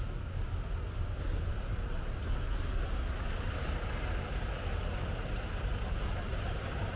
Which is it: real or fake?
real